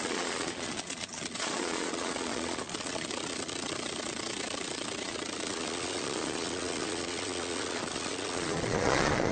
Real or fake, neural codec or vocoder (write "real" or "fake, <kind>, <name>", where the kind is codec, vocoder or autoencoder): fake, vocoder, Vocos